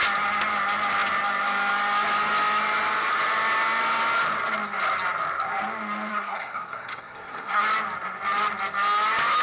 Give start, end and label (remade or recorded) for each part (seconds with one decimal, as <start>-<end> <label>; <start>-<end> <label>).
0.0-6.1 recorded; 6.1-7.6 remade; 7.6-9.4 recorded